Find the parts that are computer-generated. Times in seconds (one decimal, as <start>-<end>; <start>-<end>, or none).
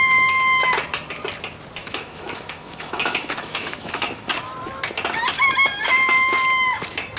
1.8-4.3